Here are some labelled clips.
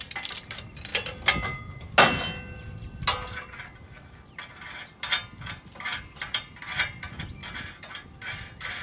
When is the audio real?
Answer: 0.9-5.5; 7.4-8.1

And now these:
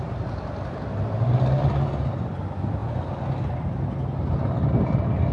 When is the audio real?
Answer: 0.0-5.3

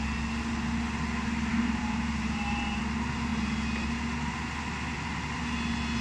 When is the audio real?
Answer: 0.0-1.5; 2.8-6.0

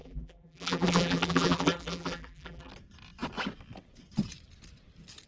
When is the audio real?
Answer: 2.7-5.3

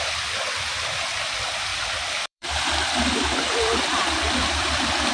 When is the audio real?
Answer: 0.0-1.7

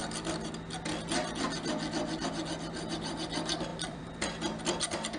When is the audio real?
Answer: 0.0-3.7; 4.6-5.2

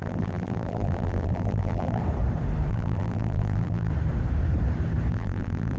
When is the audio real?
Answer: 2.0-2.7; 3.9-5.1

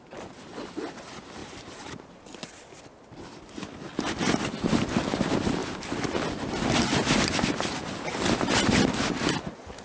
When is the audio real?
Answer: 0.0-1.4; 3.2-5.6; 6.1-9.8